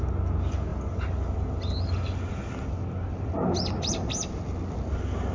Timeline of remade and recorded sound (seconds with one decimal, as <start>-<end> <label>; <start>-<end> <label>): 0.0-5.3 recorded